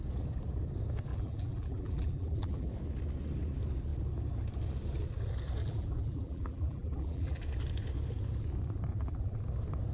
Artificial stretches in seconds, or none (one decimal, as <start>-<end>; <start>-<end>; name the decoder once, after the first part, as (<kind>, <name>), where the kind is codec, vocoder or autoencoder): 1.1-2.7 (vocoder, BigVGAN v2); 5.6-7.4; 8.9-9.4